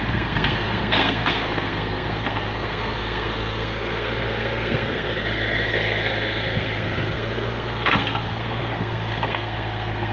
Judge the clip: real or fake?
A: fake